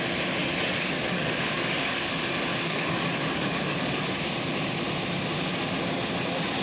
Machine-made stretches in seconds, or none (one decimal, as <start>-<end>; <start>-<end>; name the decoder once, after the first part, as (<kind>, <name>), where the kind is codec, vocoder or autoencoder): 0.4-2.1 (codec, DAC); 2.5-4.1